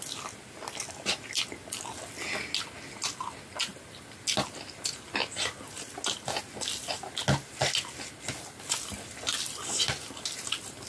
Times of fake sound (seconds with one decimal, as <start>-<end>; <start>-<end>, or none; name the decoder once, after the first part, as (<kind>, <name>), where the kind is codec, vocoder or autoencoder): none